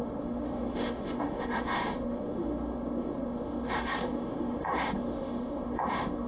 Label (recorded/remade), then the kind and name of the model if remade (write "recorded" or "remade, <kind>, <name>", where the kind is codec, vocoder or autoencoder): remade, autoencoder, DAC-VAE